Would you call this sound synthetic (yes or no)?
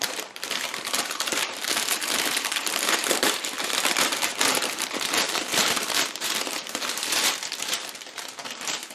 yes